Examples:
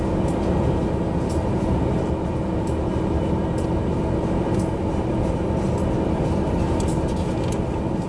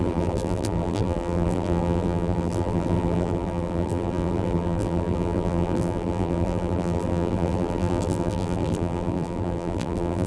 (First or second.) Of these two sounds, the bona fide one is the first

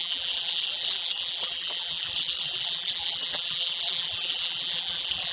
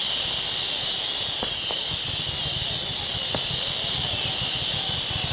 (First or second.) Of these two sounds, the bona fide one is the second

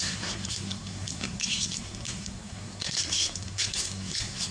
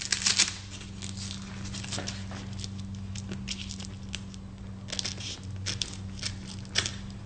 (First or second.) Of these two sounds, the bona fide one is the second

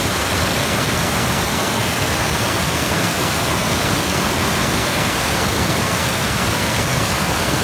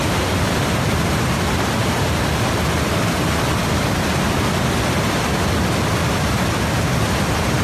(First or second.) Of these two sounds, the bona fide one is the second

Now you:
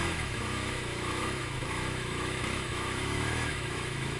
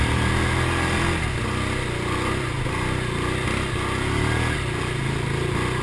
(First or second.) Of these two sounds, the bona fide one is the second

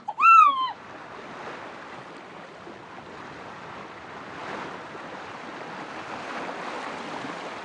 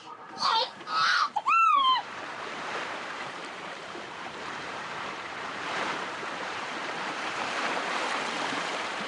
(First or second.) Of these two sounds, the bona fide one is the first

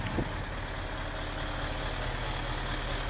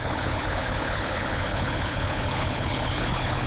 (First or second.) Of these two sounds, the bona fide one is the first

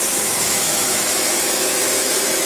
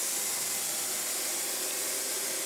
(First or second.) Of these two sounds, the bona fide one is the second